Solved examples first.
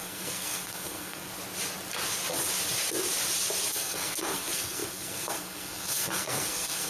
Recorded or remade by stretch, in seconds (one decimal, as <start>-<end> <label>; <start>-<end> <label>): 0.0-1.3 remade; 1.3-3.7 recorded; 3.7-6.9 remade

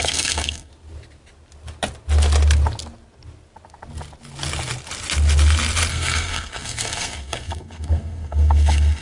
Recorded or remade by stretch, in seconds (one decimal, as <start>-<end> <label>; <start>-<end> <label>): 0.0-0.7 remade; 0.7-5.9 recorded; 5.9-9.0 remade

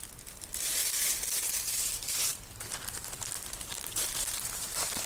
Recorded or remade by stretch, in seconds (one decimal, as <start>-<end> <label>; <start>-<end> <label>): 0.0-5.1 remade